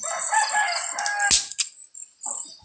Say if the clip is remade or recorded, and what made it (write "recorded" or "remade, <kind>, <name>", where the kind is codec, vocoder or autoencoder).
recorded